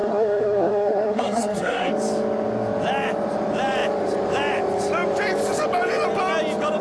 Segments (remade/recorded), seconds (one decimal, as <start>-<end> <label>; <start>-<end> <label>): 0.0-1.9 remade; 1.9-6.8 recorded